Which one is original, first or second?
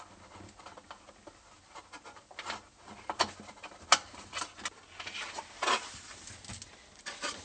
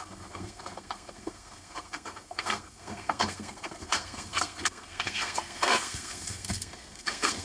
first